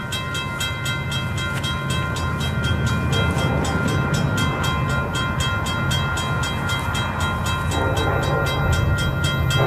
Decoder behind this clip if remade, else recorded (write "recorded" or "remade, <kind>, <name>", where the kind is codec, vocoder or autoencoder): recorded